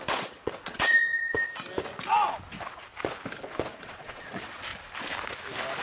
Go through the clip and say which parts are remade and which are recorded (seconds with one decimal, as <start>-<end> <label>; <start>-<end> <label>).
0.0-1.5 remade; 1.5-3.8 recorded; 3.8-4.7 remade; 4.7-5.8 recorded